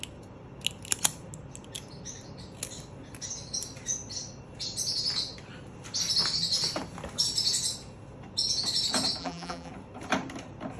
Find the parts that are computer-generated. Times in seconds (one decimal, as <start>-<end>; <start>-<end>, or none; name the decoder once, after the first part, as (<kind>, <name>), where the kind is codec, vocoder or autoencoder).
9.2-9.7 (vocoder, BigVGAN v2)